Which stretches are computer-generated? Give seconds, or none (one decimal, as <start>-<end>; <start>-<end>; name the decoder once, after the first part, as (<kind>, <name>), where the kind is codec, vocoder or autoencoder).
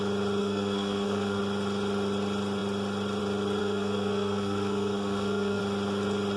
0.4-1.4 (codec, SNAC); 3.6-5.6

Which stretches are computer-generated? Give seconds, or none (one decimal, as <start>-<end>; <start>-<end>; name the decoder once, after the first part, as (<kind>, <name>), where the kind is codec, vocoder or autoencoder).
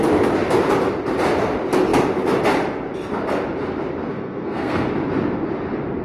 4.1-4.9 (codec, SNAC)